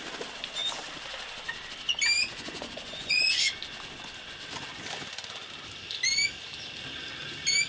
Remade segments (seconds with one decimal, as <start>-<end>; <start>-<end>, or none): 2.2-3.5